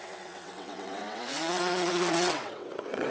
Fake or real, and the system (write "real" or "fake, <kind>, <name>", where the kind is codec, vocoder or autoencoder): fake, vocoder, WaveNeXt